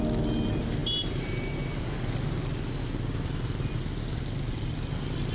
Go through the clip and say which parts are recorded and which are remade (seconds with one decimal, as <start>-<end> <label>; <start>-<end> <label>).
0.0-5.3 recorded